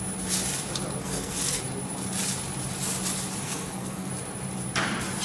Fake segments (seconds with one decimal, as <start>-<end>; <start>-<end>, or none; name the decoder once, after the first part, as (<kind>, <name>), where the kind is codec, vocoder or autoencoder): 1.0-1.6 (codec, SNAC); 3.4-4.1